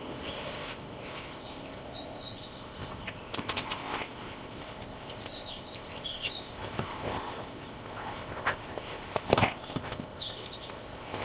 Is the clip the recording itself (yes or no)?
no